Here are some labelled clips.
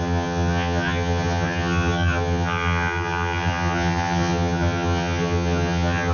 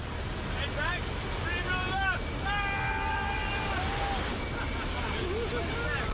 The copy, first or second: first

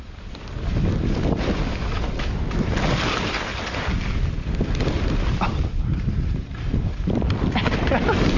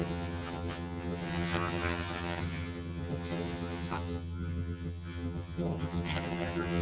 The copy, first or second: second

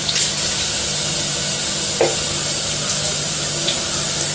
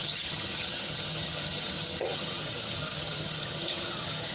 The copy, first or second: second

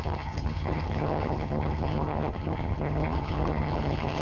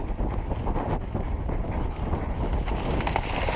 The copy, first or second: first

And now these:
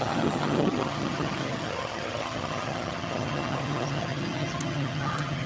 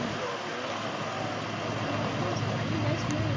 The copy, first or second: first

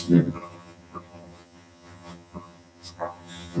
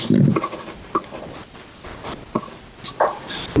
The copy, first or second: first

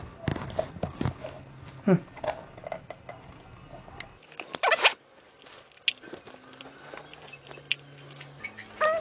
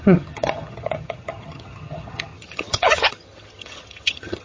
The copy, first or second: second